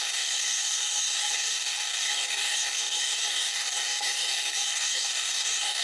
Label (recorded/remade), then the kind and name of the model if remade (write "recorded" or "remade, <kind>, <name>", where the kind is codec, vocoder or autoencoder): remade, codec, DAC